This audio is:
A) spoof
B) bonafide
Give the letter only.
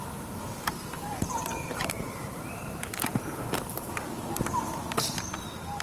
A